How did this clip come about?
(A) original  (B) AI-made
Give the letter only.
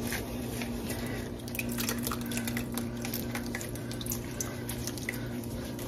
B